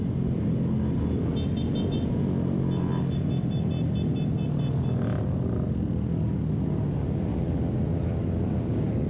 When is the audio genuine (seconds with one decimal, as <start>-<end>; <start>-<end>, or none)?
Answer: 0.0-9.1